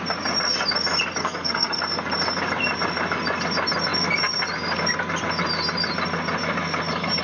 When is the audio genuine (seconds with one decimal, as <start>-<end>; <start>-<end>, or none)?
0.0-1.2; 1.8-7.2